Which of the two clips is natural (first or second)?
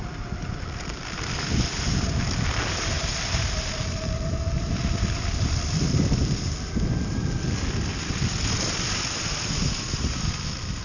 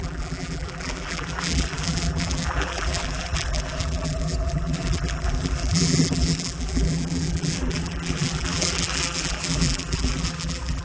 first